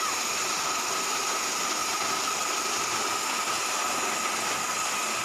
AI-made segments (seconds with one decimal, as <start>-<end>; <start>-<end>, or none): 1.8-2.9